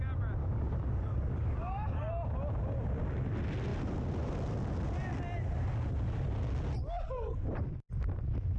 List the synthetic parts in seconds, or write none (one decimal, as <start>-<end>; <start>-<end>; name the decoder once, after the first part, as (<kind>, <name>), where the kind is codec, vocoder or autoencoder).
0.4-2.1 (codec, DAC)